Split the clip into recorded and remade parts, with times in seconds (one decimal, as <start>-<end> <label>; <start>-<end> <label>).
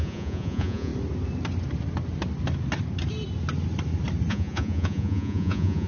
0.0-0.9 remade; 0.9-4.3 recorded; 4.3-5.9 remade